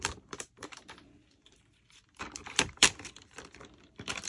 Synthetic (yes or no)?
yes